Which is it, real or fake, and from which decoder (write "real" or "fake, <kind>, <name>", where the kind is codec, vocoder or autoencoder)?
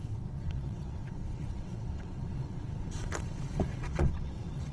fake, vocoder, WaveNeXt